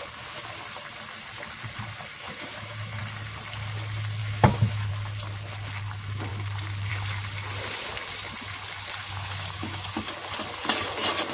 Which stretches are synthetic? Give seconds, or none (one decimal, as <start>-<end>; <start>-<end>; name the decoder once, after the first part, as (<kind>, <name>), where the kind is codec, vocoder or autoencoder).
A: 2.2-3.0 (autoencoder, DAC-VAE); 4.2-4.9; 9.0-10.0